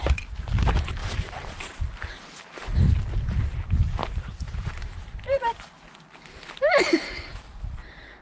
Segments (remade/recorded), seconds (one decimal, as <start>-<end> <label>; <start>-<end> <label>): 0.0-1.0 recorded; 1.0-2.9 remade; 2.9-4.0 recorded; 4.0-8.2 remade